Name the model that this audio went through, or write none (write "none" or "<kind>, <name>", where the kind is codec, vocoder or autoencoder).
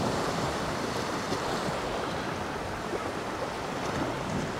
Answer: none